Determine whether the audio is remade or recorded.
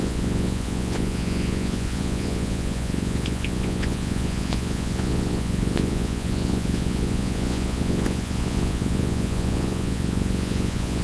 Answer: remade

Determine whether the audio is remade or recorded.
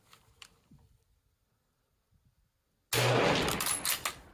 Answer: recorded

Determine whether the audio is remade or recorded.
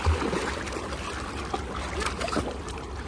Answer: recorded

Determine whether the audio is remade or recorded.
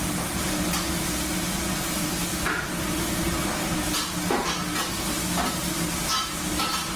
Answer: recorded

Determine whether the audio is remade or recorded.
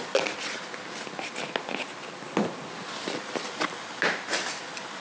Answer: recorded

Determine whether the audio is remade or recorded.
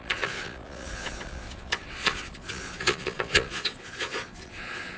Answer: remade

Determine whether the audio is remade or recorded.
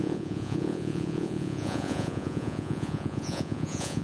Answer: remade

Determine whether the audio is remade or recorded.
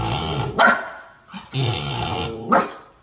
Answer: recorded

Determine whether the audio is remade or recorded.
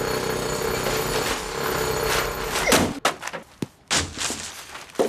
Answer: recorded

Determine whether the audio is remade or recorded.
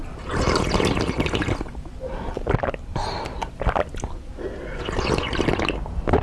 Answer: recorded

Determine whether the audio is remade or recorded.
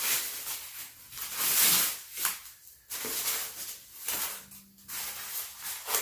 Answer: recorded